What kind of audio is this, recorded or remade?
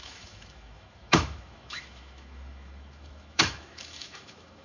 remade